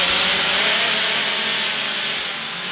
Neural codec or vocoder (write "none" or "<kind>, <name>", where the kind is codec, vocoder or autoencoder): none